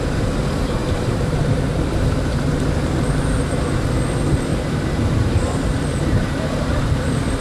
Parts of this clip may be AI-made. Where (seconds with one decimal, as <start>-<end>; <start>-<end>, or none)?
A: 0.8-2.5; 4.5-6.8